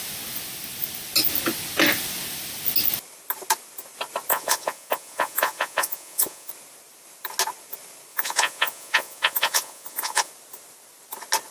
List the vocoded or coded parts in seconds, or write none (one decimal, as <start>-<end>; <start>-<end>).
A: 4.3-6.5; 8.1-10.3